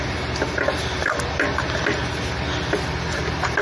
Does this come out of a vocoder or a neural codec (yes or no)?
no